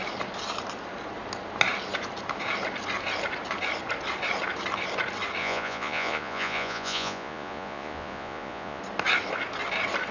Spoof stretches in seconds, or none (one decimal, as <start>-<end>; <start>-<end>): 5.4-8.8